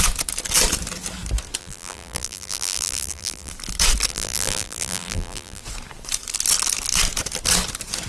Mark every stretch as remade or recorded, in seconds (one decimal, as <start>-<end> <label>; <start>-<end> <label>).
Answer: 0.0-1.6 recorded; 1.6-3.5 remade; 3.5-4.1 recorded; 4.1-5.6 remade; 5.6-8.1 recorded